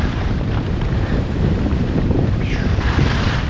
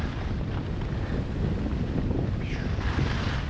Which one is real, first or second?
second